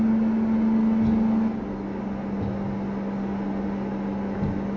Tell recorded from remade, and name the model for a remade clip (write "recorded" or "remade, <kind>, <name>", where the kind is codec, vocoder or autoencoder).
recorded